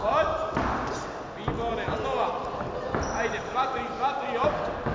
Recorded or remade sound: recorded